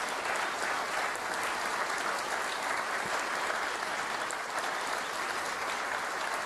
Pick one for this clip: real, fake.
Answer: real